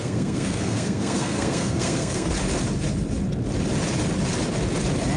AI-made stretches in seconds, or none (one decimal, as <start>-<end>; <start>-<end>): 0.0-2.3